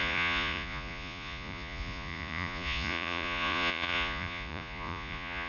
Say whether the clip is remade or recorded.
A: remade